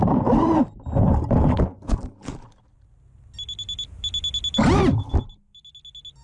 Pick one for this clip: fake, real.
real